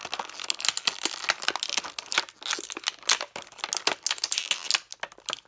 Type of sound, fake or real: real